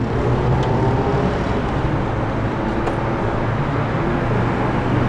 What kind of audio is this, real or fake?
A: real